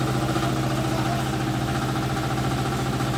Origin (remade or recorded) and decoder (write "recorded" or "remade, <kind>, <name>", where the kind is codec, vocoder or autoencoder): recorded